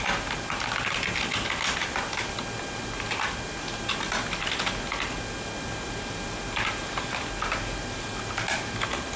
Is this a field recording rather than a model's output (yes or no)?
yes